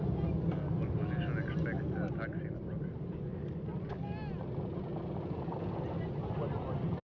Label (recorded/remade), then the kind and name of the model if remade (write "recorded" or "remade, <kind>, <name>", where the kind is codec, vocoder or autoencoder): recorded